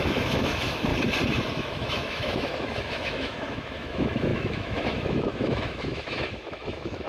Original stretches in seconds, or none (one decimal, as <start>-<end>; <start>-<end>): 0.9-1.5